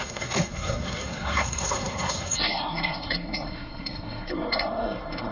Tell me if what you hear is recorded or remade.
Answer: remade